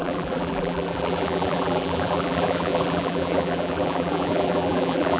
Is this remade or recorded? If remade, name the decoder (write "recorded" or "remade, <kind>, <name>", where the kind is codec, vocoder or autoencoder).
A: remade, vocoder, BigVGAN v2